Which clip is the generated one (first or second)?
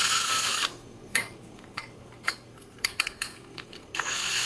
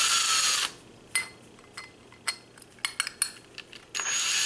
first